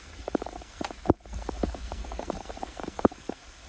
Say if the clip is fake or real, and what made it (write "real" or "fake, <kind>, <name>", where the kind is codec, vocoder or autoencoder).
fake, codec, SNAC